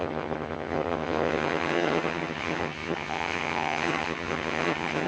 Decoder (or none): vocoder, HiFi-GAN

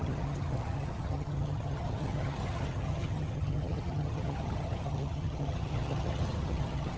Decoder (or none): vocoder, HiFi-GAN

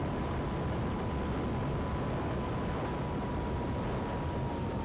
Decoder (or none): none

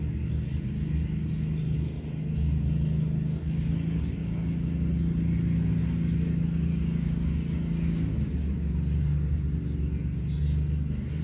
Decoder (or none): none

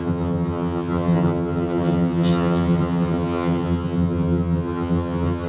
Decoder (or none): vocoder, HiFi-GAN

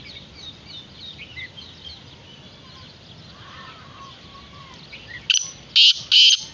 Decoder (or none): none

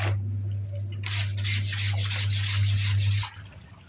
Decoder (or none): none